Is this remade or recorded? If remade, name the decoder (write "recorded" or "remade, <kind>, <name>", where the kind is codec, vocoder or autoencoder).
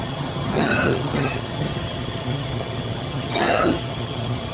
remade, vocoder, HiFi-GAN